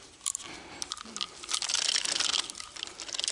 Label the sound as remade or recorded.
recorded